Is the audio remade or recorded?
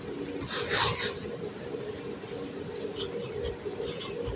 recorded